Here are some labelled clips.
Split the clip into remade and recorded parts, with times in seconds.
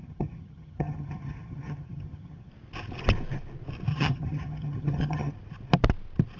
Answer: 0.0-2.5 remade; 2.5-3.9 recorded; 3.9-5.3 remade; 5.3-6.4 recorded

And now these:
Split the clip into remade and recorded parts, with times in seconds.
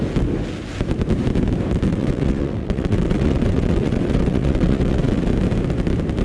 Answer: 0.0-1.9 recorded; 1.9-5.3 remade; 5.3-6.2 recorded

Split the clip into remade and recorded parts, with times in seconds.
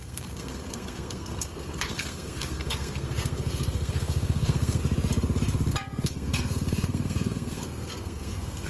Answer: 0.0-4.8 remade; 4.8-5.7 recorded; 5.7-8.7 remade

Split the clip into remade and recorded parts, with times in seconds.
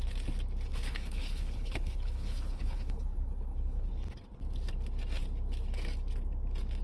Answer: 0.0-0.7 recorded; 0.7-3.9 remade; 3.9-6.8 recorded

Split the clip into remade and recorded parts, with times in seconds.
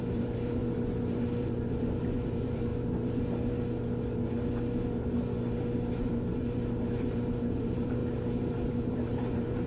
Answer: 0.0-0.6 remade; 0.6-1.4 recorded; 1.4-2.7 remade; 2.7-5.9 recorded; 5.9-9.7 remade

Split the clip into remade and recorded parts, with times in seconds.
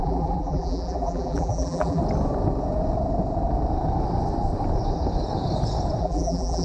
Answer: 0.0-2.0 remade; 2.0-6.0 recorded; 6.0-6.6 remade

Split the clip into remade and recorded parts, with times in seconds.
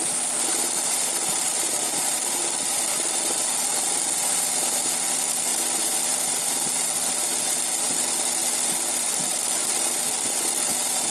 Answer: 0.0-0.5 recorded; 0.5-2.4 remade; 2.4-4.3 recorded; 4.3-4.9 remade; 4.9-11.1 recorded